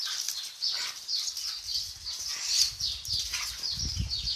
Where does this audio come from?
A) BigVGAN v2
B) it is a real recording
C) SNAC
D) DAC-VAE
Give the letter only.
B